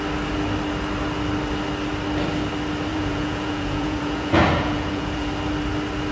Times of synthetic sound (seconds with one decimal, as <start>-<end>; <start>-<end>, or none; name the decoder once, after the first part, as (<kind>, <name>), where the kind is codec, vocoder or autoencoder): 2.9-5.3 (vocoder, Vocos)